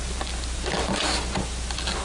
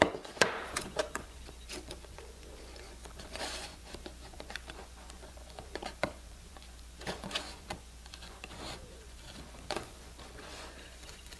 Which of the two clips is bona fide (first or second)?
first